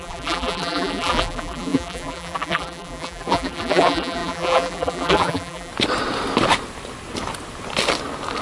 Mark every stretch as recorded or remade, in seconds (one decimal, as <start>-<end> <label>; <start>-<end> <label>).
0.0-5.7 remade; 5.7-8.4 recorded